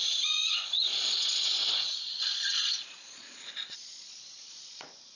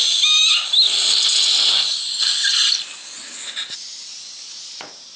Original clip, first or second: second